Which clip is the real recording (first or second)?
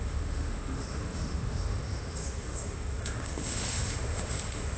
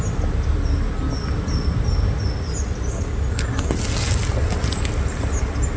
second